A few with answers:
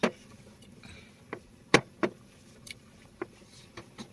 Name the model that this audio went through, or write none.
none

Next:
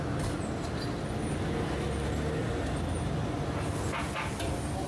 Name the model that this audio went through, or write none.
none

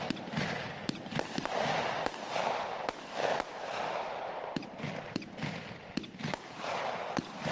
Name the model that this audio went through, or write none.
none